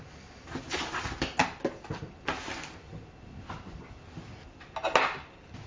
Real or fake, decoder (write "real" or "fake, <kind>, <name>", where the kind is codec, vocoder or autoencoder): real